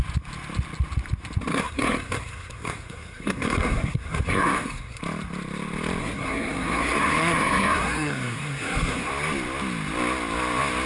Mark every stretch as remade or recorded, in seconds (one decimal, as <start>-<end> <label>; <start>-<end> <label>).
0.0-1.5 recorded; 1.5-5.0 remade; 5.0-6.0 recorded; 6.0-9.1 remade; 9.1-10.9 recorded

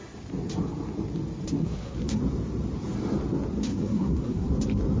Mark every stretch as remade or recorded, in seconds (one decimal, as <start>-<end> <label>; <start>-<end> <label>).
0.0-1.6 recorded; 1.6-2.2 remade; 2.2-3.7 recorded; 3.7-4.5 remade; 4.5-5.0 recorded

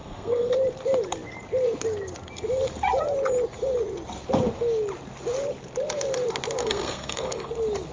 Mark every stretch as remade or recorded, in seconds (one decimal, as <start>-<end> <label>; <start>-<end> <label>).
0.0-0.5 remade; 0.5-6.6 recorded; 6.6-7.5 remade; 7.5-7.9 recorded

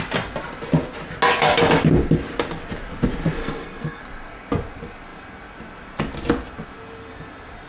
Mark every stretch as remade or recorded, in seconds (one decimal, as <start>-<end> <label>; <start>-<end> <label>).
0.0-3.4 recorded; 3.4-4.0 remade; 4.0-7.7 recorded

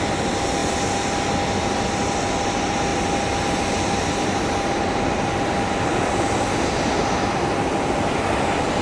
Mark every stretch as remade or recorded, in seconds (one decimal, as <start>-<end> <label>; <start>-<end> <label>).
0.0-8.8 recorded

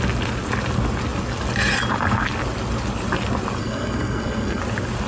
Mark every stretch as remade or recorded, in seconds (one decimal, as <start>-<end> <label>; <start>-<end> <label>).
0.0-3.6 recorded; 3.6-4.6 remade; 4.6-5.1 recorded

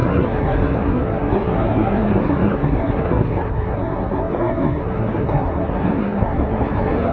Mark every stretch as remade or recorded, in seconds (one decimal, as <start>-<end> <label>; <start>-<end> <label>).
0.0-7.1 remade

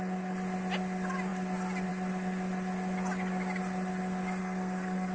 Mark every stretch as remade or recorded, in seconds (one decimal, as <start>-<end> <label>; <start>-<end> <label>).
0.0-4.4 recorded; 4.4-5.1 remade